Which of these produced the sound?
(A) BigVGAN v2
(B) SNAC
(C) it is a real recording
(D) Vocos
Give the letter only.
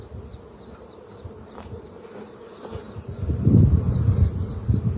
A